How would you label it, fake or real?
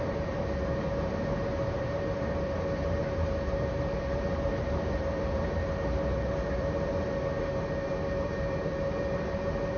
fake